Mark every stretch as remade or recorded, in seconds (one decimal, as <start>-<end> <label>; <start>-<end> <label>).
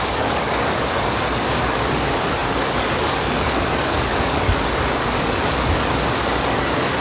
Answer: 0.0-7.0 remade